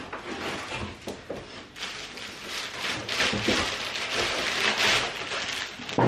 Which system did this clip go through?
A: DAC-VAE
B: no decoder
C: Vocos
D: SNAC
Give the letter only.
B